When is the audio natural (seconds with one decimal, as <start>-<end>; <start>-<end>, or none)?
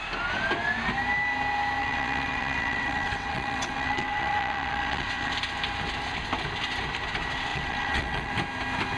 0.0-1.8; 5.3-7.5; 8.3-9.0